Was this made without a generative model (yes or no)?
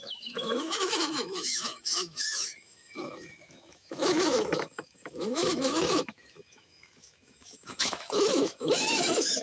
no